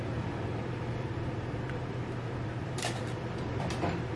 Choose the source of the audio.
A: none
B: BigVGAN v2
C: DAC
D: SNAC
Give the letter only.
B